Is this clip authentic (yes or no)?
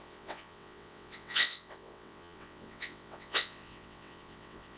no